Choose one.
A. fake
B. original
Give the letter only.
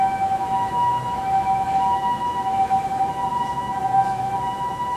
A